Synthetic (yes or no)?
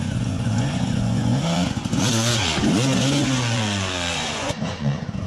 yes